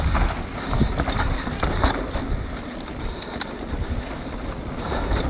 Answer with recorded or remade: recorded